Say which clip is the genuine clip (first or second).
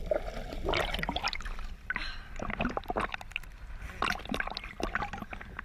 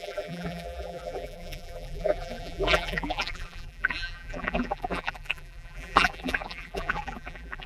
first